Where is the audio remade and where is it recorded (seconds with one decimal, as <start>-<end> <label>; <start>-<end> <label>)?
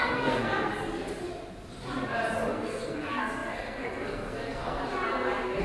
0.0-0.7 remade; 0.7-2.5 recorded; 2.5-4.8 remade; 4.8-5.6 recorded